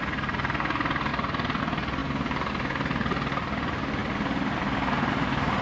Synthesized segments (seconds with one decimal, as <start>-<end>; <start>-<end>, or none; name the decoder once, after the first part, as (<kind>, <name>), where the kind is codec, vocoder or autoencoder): none